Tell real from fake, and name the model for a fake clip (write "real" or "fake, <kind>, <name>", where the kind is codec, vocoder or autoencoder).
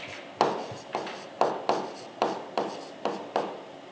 real